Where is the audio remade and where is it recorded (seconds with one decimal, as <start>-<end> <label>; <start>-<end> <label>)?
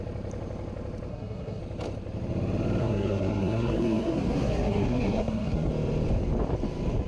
0.0-1.1 recorded; 1.1-1.6 remade; 1.6-2.8 recorded; 2.8-5.7 remade; 5.7-7.1 recorded